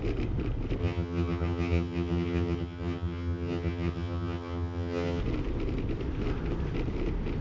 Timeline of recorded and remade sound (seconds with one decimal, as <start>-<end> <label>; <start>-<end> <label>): 0.0-0.8 recorded; 0.8-5.2 remade; 5.2-7.4 recorded